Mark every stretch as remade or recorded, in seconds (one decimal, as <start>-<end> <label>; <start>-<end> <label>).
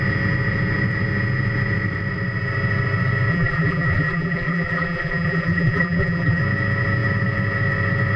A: 0.0-3.3 recorded; 3.3-6.4 remade; 6.4-8.2 recorded